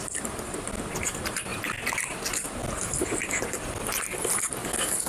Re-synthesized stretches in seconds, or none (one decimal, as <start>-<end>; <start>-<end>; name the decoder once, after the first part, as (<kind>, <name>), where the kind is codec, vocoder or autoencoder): 4.6-5.1 (codec, DAC)